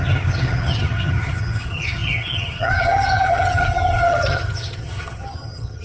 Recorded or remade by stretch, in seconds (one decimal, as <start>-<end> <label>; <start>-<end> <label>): 0.0-5.8 remade